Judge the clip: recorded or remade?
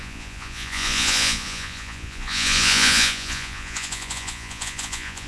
remade